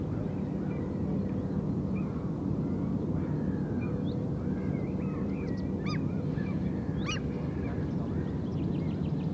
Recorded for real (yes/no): yes